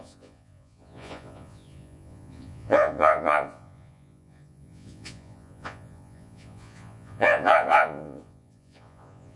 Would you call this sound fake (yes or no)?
yes